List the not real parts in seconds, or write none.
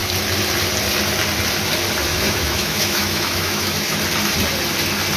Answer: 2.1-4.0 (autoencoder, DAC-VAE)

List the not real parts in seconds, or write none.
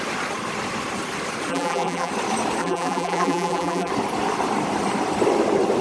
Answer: 1.5-2.1 (vocoder, BigVGAN v2); 2.6-3.9